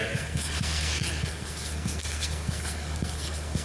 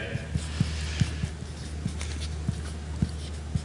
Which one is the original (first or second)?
second